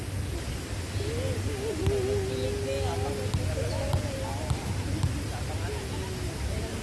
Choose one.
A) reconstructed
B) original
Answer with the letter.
B